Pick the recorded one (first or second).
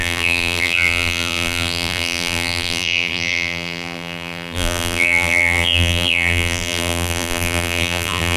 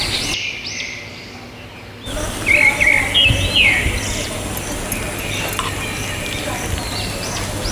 second